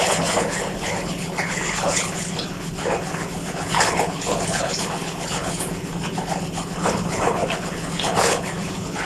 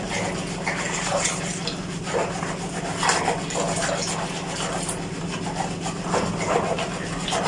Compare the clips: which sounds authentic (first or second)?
second